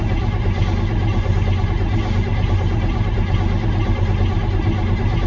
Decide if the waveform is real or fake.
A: real